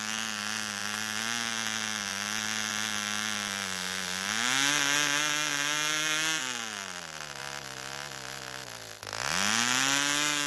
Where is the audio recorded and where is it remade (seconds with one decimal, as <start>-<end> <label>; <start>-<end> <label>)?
0.0-10.5 recorded